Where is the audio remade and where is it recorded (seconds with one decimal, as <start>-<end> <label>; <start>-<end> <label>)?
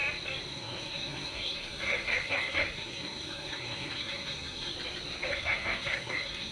0.0-0.5 recorded; 0.5-4.7 remade; 4.7-5.3 recorded; 5.3-6.5 remade